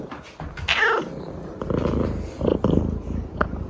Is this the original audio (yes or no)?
yes